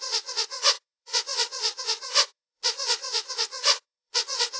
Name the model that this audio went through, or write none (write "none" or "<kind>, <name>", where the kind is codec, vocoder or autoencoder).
vocoder, WaveNeXt